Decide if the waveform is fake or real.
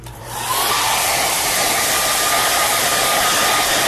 fake